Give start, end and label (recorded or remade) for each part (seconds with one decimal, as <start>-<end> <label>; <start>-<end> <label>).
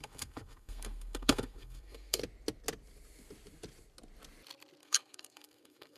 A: 0.0-2.2 remade; 2.2-4.8 recorded; 4.8-6.0 remade